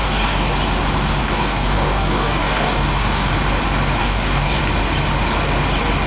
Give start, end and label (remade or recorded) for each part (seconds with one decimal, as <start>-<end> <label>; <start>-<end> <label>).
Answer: 0.0-0.5 remade; 0.5-1.2 recorded; 1.2-3.3 remade; 3.3-4.0 recorded; 4.0-4.6 remade; 4.6-6.1 recorded